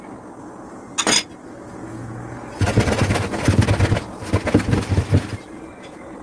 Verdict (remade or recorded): recorded